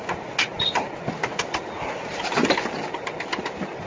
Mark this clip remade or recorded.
recorded